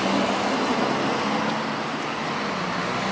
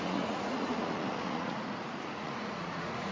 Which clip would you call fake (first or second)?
second